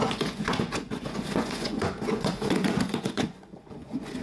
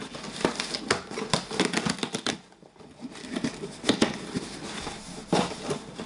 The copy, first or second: first